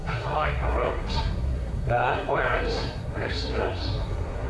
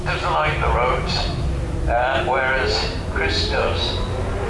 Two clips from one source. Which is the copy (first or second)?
first